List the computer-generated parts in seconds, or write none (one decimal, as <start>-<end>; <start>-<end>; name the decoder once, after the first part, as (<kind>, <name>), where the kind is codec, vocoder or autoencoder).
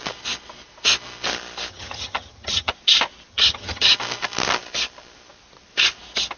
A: 1.7-2.7 (vocoder, HiFi-GAN); 3.3-3.9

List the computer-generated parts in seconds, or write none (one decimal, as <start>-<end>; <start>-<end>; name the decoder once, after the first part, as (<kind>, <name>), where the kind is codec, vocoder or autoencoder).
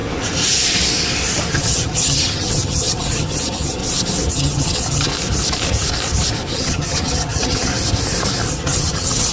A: 1.5-3.8 (vocoder, HiFi-GAN); 4.3-5.1; 6.5-7.7; 8.5-9.3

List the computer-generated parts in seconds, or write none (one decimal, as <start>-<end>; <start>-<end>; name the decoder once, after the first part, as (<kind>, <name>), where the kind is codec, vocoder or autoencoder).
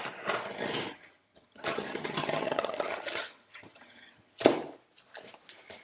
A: 0.9-4.4 (vocoder, HiFi-GAN)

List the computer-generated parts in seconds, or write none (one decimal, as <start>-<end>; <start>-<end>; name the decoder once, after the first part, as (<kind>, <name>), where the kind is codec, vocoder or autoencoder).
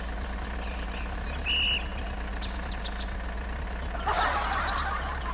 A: none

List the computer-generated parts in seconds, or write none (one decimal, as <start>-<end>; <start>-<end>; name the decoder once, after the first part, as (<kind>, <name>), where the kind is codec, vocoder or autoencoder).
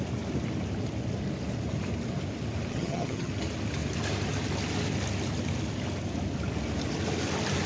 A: 2.7-3.3 (vocoder, HiFi-GAN)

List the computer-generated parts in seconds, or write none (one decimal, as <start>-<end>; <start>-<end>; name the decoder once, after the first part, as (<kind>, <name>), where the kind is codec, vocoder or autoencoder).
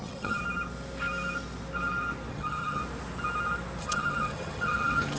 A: 0.0-0.4 (vocoder, HiFi-GAN); 2.3-2.8; 3.8-5.2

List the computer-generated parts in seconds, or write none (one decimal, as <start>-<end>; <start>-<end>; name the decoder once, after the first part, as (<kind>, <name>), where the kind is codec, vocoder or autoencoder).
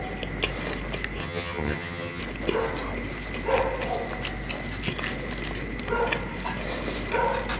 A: 1.2-2.2 (vocoder, HiFi-GAN)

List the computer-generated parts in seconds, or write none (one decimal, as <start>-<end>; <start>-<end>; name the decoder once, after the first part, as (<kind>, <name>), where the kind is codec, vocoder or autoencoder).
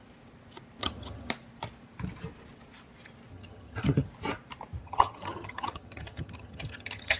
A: 0.8-1.3 (vocoder, HiFi-GAN); 3.3-4.1; 4.8-7.2